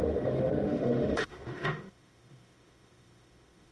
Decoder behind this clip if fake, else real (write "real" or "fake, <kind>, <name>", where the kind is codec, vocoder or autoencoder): fake, autoencoder, DAC-VAE